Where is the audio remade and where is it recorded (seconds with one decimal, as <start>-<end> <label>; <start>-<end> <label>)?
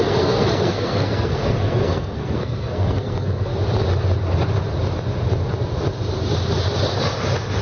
0.0-3.5 remade; 3.5-7.6 recorded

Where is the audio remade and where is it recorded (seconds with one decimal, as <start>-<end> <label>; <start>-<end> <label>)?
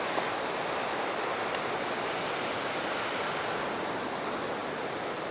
0.0-5.3 recorded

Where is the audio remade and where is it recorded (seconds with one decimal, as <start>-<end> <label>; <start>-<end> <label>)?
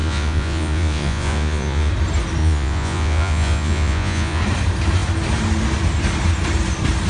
0.0-1.9 remade; 1.9-2.4 recorded; 2.4-4.4 remade; 4.4-7.1 recorded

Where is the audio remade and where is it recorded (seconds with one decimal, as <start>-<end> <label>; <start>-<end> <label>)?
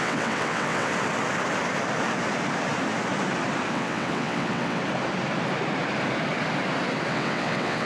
0.0-0.9 remade; 0.9-3.7 recorded; 3.7-4.8 remade; 4.8-7.1 recorded; 7.1-7.9 remade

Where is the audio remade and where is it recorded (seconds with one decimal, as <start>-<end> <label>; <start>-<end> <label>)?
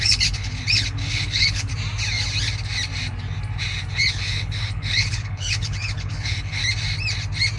0.0-1.7 remade; 1.7-3.9 recorded; 3.9-6.6 remade; 6.6-7.6 recorded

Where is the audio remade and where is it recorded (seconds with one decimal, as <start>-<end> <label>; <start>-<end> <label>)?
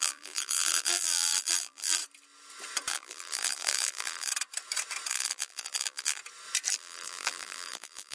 0.0-2.0 remade; 2.0-2.9 recorded; 2.9-4.3 remade; 4.3-5.1 recorded; 5.1-6.2 remade; 6.2-6.7 recorded; 6.7-8.1 remade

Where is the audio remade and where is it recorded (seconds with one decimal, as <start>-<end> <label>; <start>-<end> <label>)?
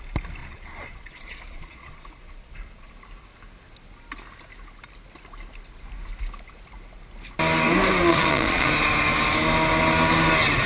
0.0-0.4 recorded; 0.4-2.9 remade; 2.9-8.1 recorded; 8.1-8.7 remade; 8.7-10.7 recorded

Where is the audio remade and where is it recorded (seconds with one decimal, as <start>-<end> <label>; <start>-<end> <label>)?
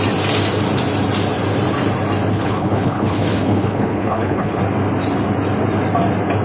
0.0-2.3 recorded; 2.3-4.6 remade; 4.6-6.4 recorded